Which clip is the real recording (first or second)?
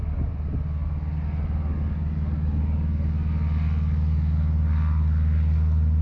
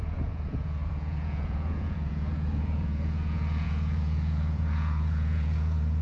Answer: first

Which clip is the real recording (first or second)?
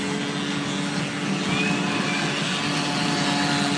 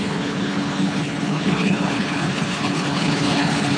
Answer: first